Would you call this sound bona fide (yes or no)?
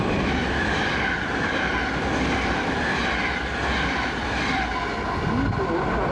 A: yes